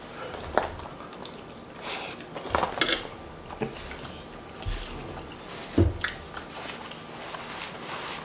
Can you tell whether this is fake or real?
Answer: real